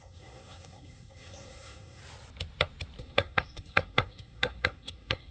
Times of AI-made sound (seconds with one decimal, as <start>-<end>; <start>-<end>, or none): 0.0-2.0; 3.0-5.3